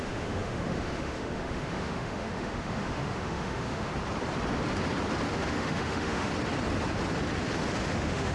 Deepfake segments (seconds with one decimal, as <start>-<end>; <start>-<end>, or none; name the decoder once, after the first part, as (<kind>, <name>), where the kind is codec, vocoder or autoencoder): 0.0-3.9 (autoencoder, DAC-VAE); 5.3-6.3; 7.8-8.3